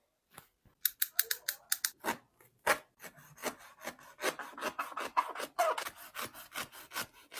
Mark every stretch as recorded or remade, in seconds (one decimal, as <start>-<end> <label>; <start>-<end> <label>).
0.0-7.4 recorded